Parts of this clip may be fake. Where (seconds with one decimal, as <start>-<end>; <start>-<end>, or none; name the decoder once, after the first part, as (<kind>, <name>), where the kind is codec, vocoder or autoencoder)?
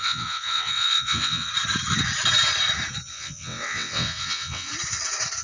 0.0-1.5 (vocoder, WaveNeXt); 3.1-4.7